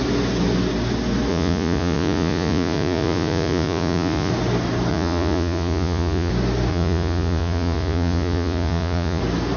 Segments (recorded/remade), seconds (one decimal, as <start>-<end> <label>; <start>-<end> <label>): 0.0-1.3 recorded; 1.3-4.3 remade; 4.3-4.9 recorded; 4.9-6.3 remade; 6.3-6.7 recorded; 6.7-9.2 remade; 9.2-9.6 recorded